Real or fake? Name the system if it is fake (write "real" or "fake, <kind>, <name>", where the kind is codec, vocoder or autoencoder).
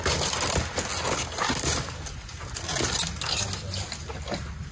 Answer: real